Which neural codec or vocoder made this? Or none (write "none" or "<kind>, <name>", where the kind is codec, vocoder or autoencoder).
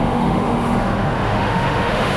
autoencoder, DAC-VAE